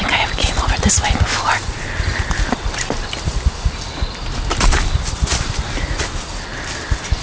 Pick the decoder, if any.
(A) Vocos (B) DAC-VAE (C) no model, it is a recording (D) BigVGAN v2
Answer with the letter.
C